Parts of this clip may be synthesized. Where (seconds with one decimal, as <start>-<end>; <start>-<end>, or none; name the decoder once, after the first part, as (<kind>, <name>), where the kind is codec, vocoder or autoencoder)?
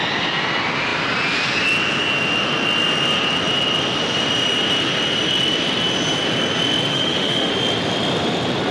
6.9-7.5 (autoencoder, DAC-VAE)